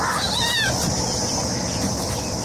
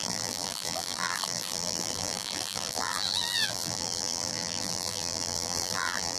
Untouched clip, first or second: first